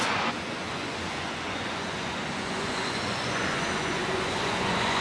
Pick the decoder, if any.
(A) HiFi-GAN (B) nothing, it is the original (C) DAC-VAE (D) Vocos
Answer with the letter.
D